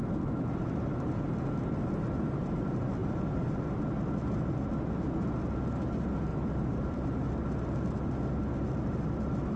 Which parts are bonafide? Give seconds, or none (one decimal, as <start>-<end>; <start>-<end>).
0.0-3.0; 3.8-6.3; 7.3-9.6